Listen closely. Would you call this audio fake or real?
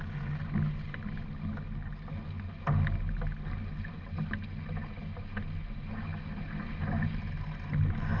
real